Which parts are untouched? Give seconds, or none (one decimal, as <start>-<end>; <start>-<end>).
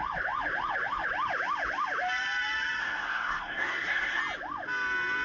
0.0-2.8; 4.2-5.2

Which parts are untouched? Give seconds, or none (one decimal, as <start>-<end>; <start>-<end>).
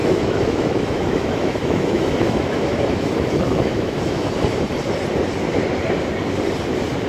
4.3-7.1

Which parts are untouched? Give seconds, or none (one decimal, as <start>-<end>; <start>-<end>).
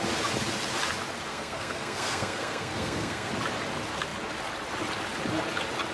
0.0-1.3; 3.3-5.9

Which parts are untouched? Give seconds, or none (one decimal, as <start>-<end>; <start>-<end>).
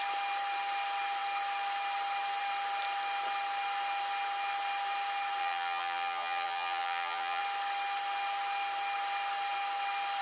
0.0-5.4; 7.4-10.2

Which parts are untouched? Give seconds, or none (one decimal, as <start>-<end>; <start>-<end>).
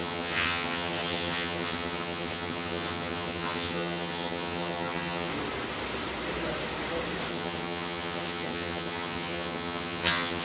5.3-7.3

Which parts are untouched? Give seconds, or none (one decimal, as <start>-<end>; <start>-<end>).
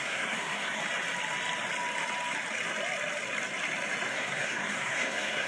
0.8-4.1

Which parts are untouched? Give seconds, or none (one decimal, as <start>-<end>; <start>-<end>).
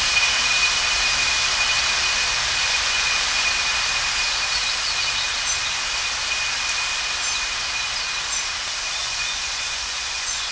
0.0-2.6; 3.5-9.0